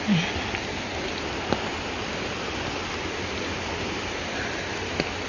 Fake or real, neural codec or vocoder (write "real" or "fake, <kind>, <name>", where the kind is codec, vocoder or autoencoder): real